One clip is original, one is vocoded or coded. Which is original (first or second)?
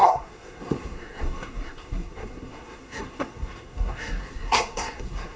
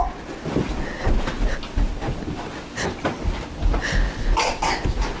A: second